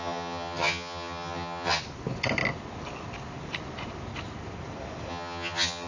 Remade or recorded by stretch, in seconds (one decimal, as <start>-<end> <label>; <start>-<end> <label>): 0.0-1.8 remade; 1.8-5.1 recorded; 5.1-5.9 remade